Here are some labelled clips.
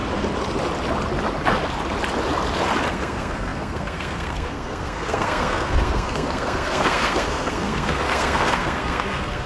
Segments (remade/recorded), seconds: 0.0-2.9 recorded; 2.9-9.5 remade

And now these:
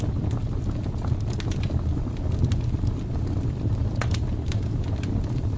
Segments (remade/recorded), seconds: 0.0-5.6 recorded

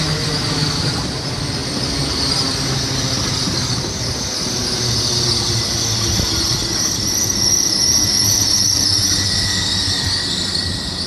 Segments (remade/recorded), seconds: 0.0-11.1 recorded